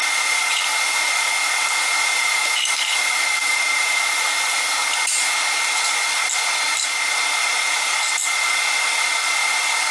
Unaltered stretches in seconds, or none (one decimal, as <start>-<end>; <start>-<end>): 0.0-9.9